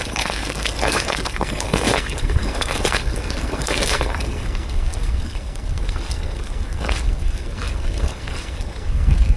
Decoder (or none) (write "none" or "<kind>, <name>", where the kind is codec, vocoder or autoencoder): codec, SNAC